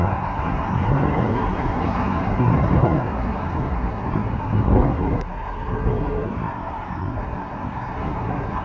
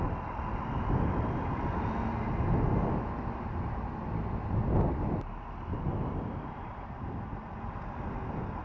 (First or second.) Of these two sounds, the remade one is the first